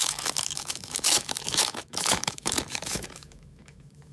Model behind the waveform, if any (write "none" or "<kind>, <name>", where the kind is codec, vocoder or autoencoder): autoencoder, DAC-VAE